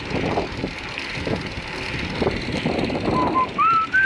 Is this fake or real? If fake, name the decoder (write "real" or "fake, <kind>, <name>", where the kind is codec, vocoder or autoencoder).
real